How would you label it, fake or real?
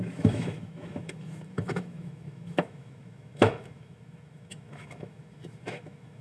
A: fake